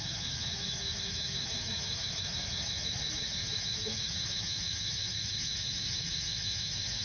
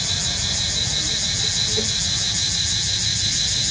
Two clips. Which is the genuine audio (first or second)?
second